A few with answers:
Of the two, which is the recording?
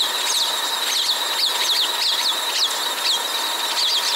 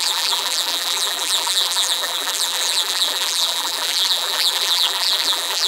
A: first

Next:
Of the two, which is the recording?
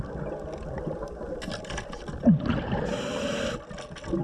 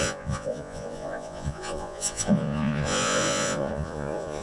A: first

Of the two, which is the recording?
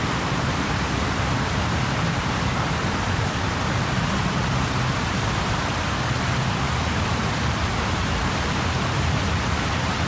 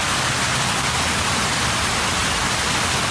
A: second